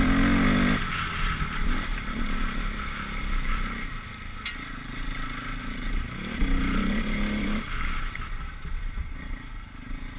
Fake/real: real